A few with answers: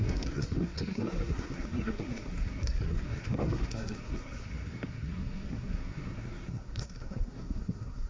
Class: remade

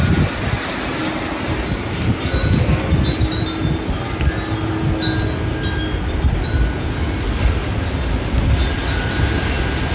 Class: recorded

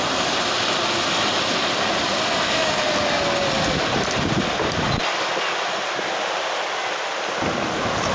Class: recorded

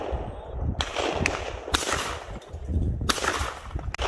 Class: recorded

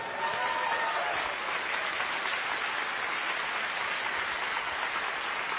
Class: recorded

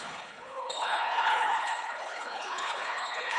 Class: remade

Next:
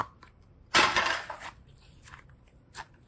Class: remade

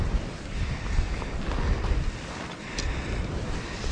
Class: recorded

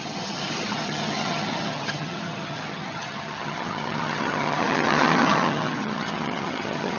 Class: remade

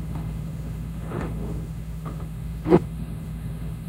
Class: remade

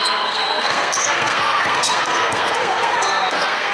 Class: remade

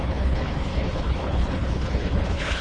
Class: remade